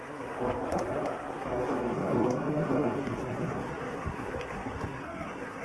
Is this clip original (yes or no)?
no